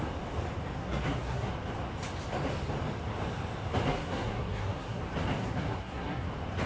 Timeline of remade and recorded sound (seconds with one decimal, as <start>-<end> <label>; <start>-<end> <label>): 0.0-0.8 recorded; 0.8-1.5 remade; 1.5-3.9 recorded; 3.9-5.0 remade; 5.0-5.4 recorded; 5.4-6.3 remade; 6.3-6.7 recorded